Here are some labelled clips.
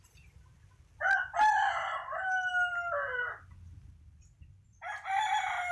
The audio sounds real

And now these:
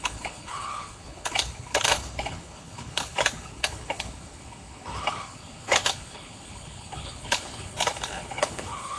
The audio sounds fake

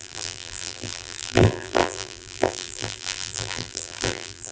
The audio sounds fake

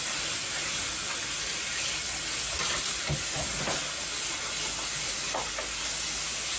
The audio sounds real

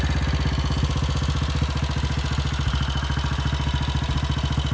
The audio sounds real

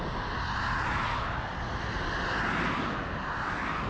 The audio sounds real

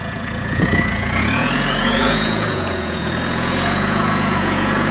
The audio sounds fake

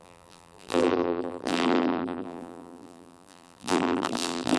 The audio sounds fake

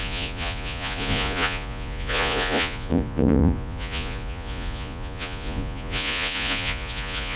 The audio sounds fake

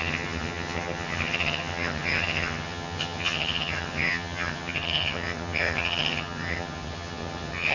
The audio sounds fake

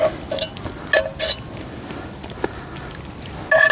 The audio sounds real